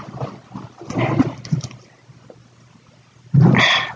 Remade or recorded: recorded